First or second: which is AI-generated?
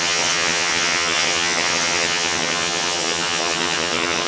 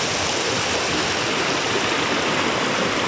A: first